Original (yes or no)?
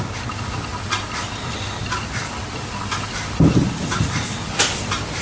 yes